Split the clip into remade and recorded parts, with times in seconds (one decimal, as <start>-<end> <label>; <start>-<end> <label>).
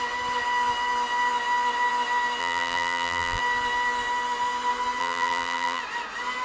0.0-2.4 recorded; 2.4-3.4 remade; 3.4-5.0 recorded; 5.0-5.8 remade; 5.8-6.4 recorded